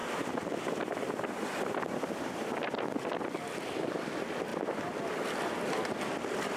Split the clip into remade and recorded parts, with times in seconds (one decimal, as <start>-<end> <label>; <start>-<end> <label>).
0.0-6.6 recorded